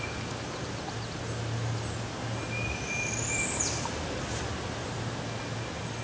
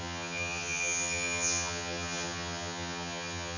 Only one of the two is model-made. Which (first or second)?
second